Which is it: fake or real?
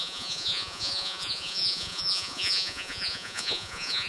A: fake